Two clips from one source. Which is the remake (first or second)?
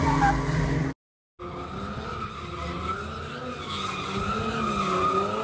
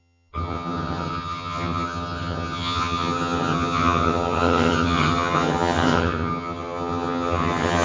second